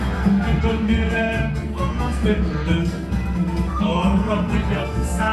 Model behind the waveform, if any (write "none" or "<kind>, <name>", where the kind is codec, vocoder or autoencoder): codec, SNAC